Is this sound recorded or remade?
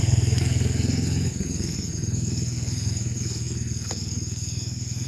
remade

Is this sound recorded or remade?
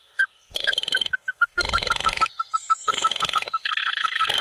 remade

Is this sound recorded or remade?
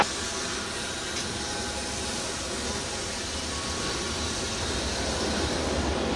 recorded